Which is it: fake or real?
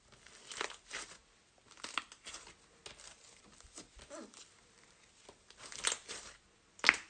real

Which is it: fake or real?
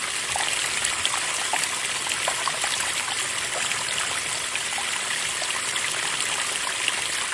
real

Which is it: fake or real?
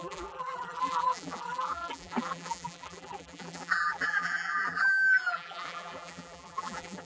fake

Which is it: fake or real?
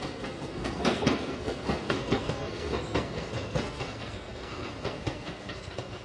fake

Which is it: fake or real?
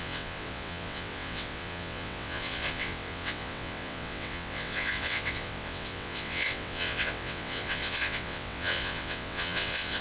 fake